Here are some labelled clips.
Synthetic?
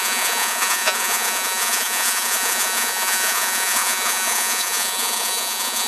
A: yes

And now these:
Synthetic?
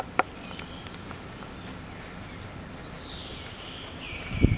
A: no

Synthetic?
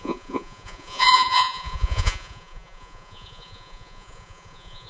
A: yes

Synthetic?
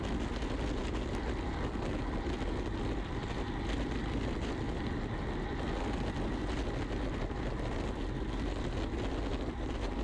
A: no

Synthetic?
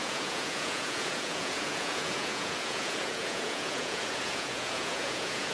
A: yes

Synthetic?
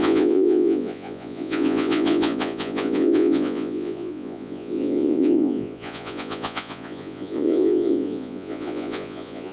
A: yes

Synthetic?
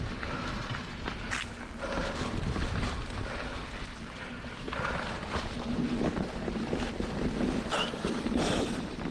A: no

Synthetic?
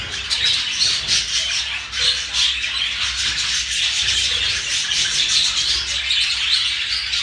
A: no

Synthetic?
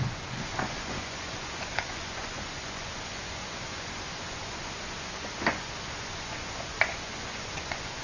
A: yes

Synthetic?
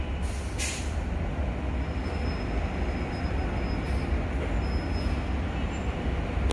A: no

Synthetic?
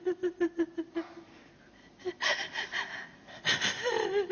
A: no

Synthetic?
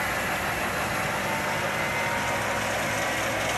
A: no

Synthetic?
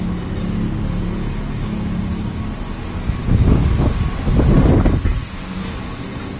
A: no